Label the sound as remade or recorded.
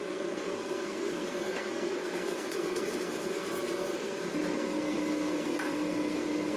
remade